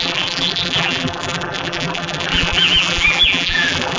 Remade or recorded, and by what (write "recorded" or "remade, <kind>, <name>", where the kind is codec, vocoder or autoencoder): remade, vocoder, BigVGAN v2